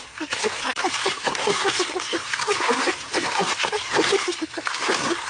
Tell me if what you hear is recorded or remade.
remade